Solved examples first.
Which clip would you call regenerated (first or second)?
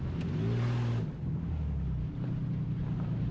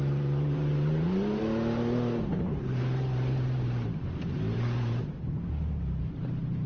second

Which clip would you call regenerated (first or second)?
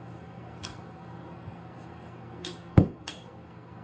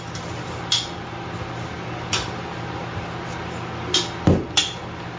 first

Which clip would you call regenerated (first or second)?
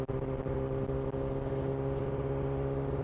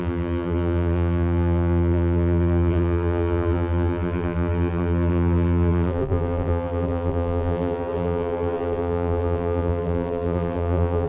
second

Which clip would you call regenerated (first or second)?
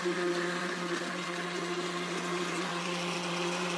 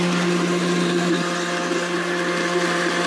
first